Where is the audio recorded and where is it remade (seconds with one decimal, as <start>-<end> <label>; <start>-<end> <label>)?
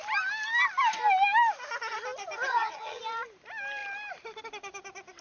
0.0-2.5 recorded; 2.5-3.0 remade; 3.0-5.2 recorded